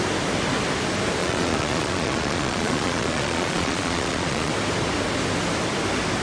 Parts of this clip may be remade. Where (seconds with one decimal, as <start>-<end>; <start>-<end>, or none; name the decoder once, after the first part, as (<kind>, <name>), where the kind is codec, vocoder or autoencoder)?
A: 1.2-4.5 (vocoder, Vocos)